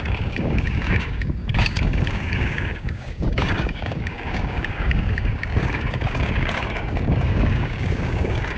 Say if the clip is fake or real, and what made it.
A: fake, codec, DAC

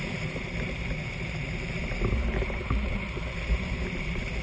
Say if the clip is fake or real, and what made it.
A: fake, vocoder, BigVGAN v2